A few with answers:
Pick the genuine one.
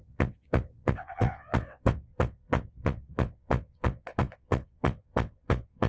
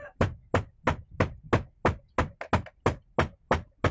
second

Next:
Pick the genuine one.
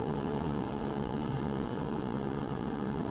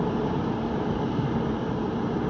second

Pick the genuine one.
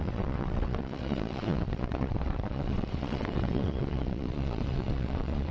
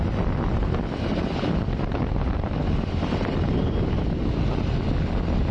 second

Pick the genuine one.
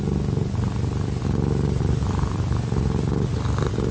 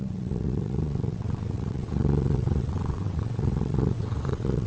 first